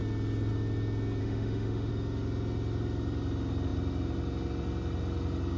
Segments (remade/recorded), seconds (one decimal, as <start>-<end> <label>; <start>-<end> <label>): 0.0-1.2 recorded; 1.2-1.9 remade; 1.9-5.6 recorded